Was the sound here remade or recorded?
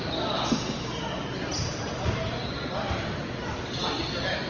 recorded